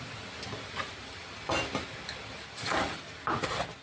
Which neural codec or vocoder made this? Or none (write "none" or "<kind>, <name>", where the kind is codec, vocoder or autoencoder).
none